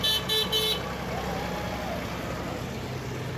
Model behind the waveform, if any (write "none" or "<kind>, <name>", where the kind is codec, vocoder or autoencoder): none